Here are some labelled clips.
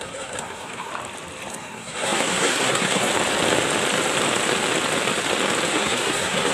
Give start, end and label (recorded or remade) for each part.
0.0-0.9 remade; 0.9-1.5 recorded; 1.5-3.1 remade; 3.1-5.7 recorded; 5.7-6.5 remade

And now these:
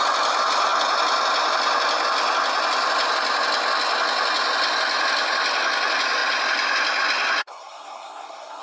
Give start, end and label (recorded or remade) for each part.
0.0-7.4 recorded; 7.4-8.6 remade

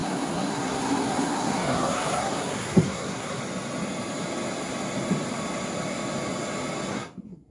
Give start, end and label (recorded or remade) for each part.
0.0-3.4 remade; 3.4-6.9 recorded; 6.9-7.5 remade

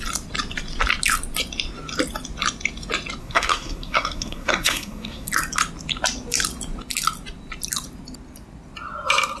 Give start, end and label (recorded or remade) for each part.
0.0-3.2 recorded; 3.2-5.3 remade; 5.3-9.4 recorded

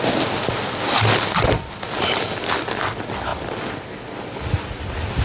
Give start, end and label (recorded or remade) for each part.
0.0-5.2 recorded